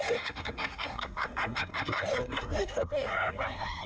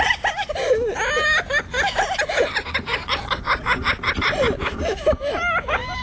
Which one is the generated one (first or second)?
first